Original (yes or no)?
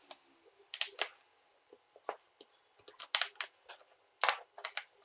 yes